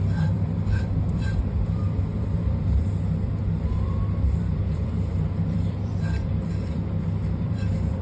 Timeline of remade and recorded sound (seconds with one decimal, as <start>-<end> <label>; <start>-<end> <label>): 0.0-8.0 remade